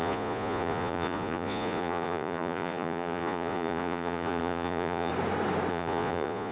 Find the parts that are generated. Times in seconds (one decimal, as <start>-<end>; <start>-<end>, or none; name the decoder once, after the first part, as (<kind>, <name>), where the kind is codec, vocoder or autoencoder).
0.0-5.1 (vocoder, Vocos); 5.7-6.5